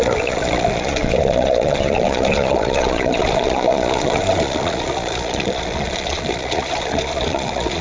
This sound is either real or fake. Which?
fake